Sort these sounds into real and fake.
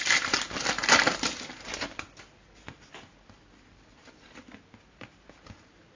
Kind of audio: real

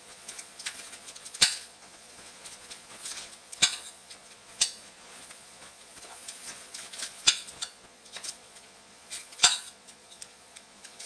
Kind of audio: fake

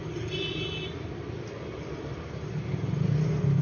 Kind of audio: real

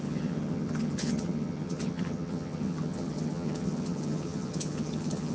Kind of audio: fake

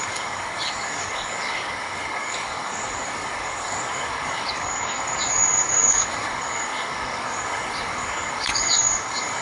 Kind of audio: fake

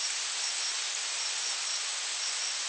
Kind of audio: real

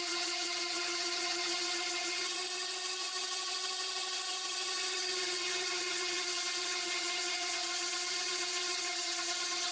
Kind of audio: fake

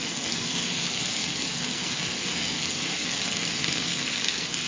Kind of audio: fake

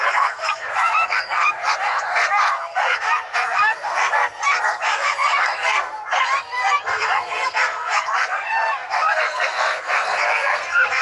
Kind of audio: fake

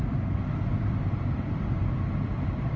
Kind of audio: real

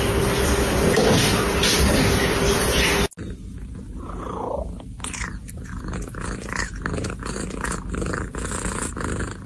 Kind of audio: real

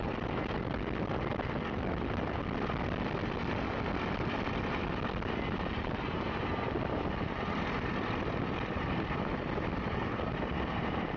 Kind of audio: real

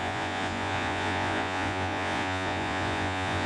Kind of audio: fake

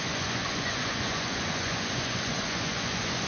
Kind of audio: fake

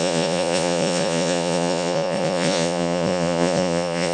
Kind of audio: fake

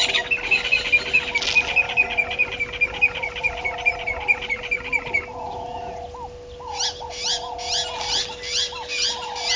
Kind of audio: real